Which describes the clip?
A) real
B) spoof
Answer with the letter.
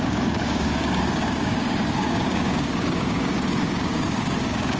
B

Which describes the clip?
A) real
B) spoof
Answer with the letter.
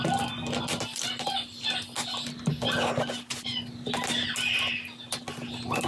A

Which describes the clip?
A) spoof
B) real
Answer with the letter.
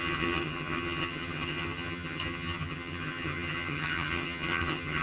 A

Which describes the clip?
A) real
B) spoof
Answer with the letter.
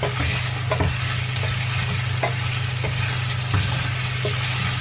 A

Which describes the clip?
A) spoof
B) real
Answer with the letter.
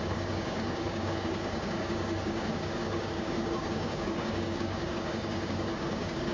A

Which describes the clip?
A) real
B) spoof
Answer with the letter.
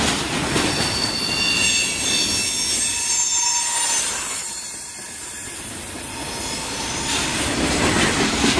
A